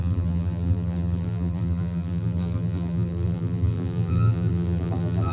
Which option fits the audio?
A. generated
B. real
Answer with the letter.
A